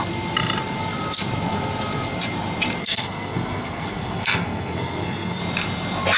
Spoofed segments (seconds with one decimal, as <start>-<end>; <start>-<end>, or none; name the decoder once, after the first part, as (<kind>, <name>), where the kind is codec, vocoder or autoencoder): 2.8-5.4 (codec, SNAC)